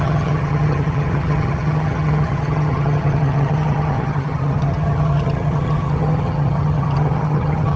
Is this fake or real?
fake